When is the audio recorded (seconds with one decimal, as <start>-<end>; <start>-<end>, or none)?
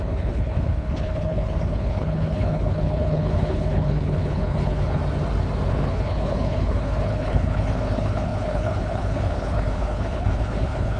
5.0-5.7